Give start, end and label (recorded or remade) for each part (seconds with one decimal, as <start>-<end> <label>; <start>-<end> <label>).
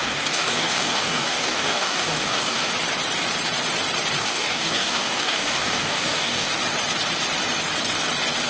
0.0-2.7 remade; 2.7-4.2 recorded; 4.2-6.5 remade; 6.5-8.5 recorded